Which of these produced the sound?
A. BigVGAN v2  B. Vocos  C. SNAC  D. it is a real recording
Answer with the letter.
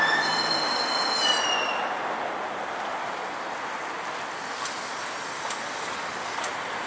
D